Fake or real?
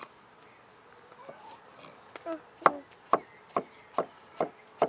real